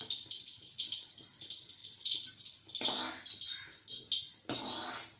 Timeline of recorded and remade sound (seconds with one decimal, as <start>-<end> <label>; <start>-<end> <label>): 0.0-1.8 recorded; 1.8-2.3 remade; 2.3-5.2 recorded